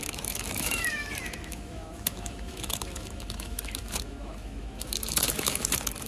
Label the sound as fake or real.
fake